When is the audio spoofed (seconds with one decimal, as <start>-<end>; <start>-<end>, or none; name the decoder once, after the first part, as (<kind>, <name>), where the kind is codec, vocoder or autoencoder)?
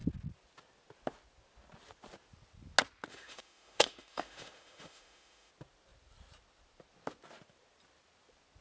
3.1-5.5 (autoencoder, DAC-VAE)